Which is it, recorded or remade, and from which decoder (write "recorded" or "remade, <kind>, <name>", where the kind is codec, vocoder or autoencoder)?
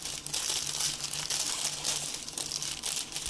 recorded